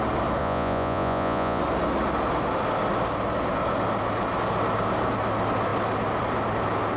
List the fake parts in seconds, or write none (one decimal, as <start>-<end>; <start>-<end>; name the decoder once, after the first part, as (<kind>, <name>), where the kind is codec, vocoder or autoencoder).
0.4-1.6 (vocoder, Vocos)